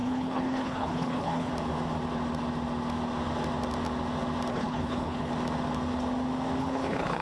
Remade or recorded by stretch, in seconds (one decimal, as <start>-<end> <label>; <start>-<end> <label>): 0.0-1.5 remade; 1.5-4.5 recorded; 4.5-5.3 remade; 5.3-6.6 recorded; 6.6-7.2 remade